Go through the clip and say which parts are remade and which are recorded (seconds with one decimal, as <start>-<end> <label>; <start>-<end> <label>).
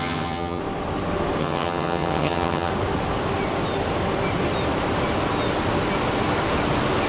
0.0-0.6 remade; 0.6-1.4 recorded; 1.4-2.7 remade; 2.7-7.1 recorded